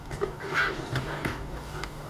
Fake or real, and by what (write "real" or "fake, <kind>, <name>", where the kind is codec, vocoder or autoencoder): fake, codec, DAC